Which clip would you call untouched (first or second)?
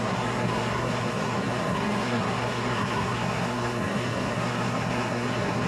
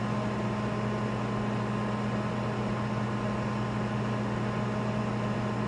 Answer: second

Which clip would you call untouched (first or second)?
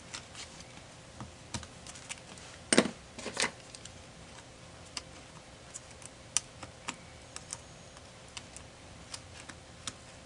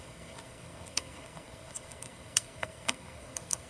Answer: first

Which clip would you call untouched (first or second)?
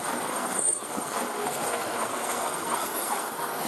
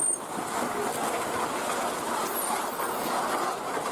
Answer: second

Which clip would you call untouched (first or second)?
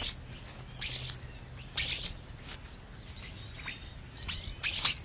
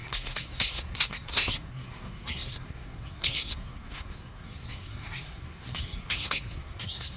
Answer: first